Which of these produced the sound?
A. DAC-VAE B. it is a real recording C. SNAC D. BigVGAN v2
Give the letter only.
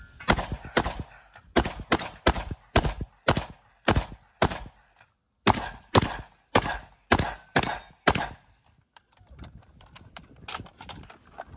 B